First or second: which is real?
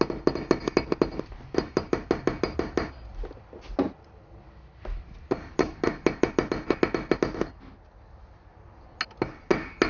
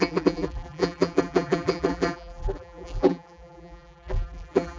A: first